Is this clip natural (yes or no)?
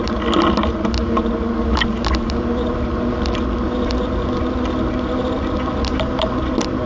yes